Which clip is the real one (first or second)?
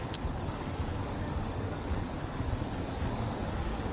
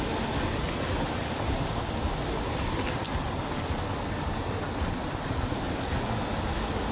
second